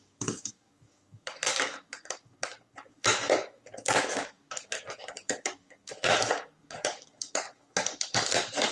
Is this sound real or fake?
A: fake